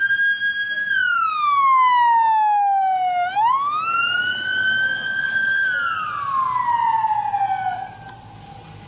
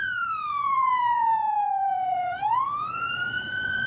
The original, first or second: first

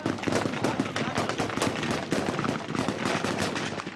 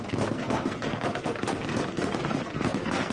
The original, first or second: first